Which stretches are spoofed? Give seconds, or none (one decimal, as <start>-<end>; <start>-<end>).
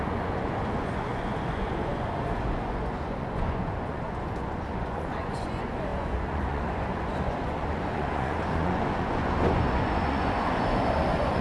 0.0-11.4